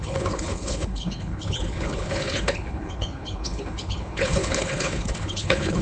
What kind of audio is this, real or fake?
fake